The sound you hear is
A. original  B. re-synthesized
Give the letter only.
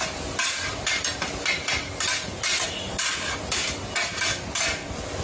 A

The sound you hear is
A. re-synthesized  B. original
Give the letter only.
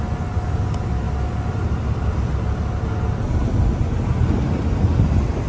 B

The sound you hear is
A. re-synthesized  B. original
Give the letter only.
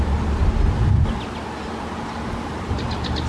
B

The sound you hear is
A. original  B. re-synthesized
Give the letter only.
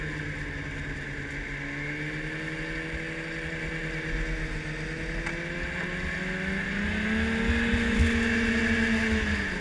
A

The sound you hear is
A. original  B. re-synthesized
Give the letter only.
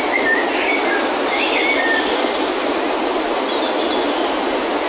A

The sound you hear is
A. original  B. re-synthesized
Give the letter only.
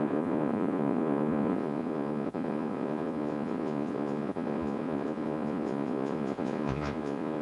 B